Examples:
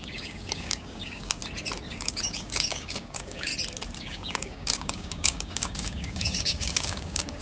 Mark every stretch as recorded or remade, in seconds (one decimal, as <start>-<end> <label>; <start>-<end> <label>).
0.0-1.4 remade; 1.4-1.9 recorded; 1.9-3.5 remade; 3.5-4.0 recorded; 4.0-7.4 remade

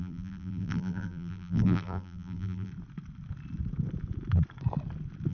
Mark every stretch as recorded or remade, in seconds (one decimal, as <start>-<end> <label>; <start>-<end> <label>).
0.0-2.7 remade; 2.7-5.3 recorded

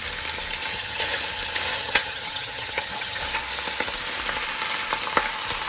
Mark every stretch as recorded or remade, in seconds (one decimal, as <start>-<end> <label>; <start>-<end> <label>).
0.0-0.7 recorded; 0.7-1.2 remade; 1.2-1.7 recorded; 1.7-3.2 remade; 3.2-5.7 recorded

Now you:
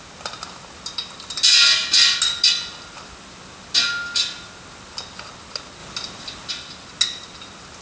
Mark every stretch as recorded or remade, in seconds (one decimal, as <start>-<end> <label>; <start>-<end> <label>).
0.0-7.8 recorded

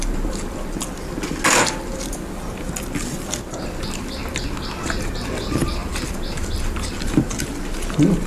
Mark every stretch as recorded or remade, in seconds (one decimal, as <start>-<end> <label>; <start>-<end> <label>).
0.0-5.8 recorded; 5.8-7.5 remade; 7.5-8.3 recorded

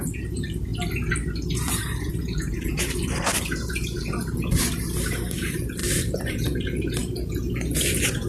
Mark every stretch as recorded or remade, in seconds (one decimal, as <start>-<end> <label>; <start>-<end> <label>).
0.0-7.0 remade; 7.0-7.8 recorded; 7.8-8.3 remade

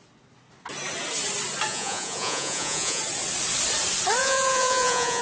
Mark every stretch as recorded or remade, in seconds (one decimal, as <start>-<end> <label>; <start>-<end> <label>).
0.0-1.7 recorded; 1.7-3.0 remade; 3.0-4.2 recorded; 4.2-5.2 remade

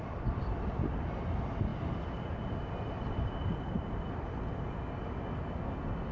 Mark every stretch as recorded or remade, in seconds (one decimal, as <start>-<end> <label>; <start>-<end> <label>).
0.0-6.1 recorded